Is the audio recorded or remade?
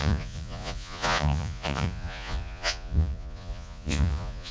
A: remade